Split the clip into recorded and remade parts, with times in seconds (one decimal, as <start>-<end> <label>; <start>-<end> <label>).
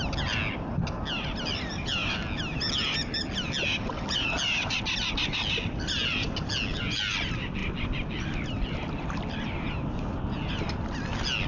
0.0-11.5 recorded